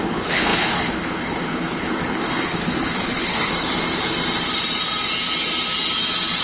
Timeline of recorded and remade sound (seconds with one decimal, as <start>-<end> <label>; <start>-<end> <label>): 0.0-3.5 remade; 3.5-6.4 recorded